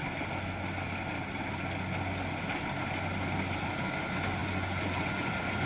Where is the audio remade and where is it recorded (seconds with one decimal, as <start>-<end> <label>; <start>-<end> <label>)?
0.0-4.4 recorded; 4.4-5.3 remade; 5.3-5.7 recorded